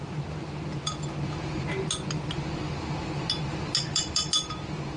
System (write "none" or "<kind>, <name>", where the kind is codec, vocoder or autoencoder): none